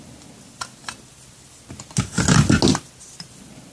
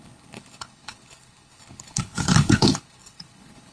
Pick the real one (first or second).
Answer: first